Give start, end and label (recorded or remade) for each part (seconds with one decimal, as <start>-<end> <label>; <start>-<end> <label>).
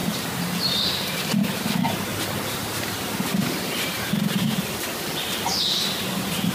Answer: 0.0-2.1 remade; 2.1-6.0 recorded; 6.0-6.5 remade